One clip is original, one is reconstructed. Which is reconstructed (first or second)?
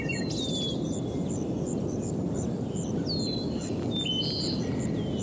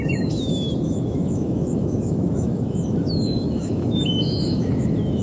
second